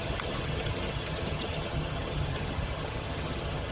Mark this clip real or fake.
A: fake